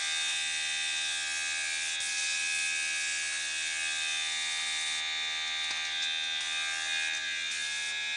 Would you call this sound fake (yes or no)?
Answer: no